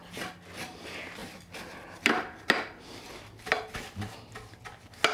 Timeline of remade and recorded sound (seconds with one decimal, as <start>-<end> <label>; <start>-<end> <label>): 0.0-5.1 recorded